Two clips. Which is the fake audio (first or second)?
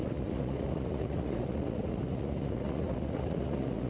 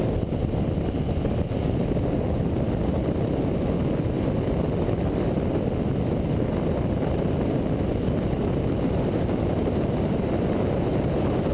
first